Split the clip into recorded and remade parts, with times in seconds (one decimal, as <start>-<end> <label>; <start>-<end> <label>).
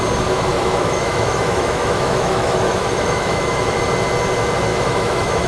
0.0-0.5 recorded; 0.5-3.8 remade; 3.8-4.7 recorded; 4.7-5.5 remade